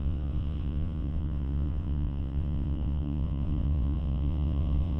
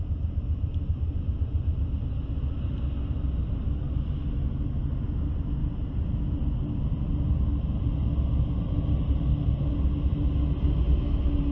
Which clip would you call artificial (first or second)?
first